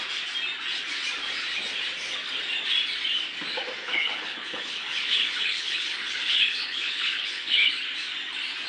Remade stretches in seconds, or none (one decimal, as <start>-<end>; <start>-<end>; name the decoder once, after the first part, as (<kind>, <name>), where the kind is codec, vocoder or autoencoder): 3.8-7.7 (codec, HILCodec)